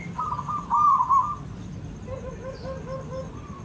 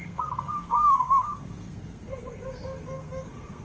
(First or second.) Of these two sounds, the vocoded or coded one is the second